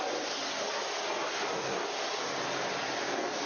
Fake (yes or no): no